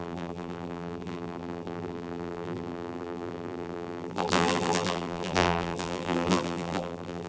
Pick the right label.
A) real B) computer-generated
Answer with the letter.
B